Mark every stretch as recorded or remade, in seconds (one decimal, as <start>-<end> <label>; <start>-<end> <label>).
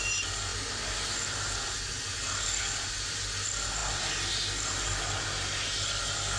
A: 0.0-6.4 recorded